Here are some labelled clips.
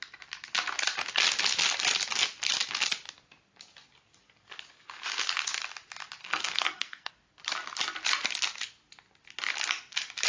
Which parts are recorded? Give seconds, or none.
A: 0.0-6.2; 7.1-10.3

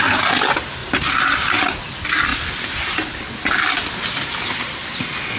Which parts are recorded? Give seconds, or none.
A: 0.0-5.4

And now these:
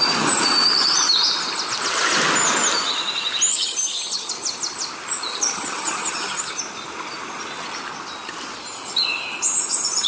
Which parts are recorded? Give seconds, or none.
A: 0.0-3.5; 4.3-5.3; 6.6-10.1

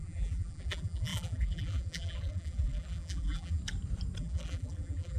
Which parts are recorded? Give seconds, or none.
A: 3.6-4.2

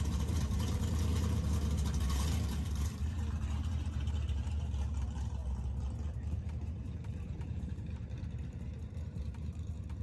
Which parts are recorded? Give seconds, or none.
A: 1.1-2.1; 5.4-6.4

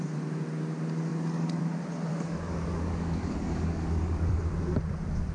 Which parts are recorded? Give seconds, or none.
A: 0.0-1.1; 1.6-2.1; 4.4-5.3